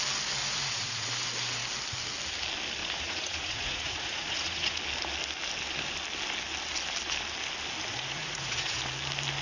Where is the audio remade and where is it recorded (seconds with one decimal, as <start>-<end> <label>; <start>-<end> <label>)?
0.0-0.4 recorded; 0.4-1.1 remade; 1.1-2.8 recorded; 2.8-4.8 remade; 4.8-7.9 recorded; 7.9-8.8 remade; 8.8-9.4 recorded